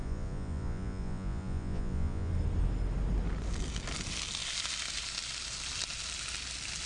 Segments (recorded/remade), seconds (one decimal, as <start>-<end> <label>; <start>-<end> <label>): 0.0-2.3 remade; 2.3-6.9 recorded